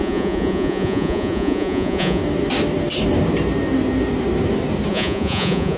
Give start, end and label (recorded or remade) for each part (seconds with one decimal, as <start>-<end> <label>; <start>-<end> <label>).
0.0-2.2 remade; 2.2-4.9 recorded; 4.9-5.8 remade